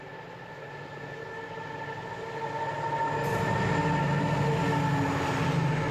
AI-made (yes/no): no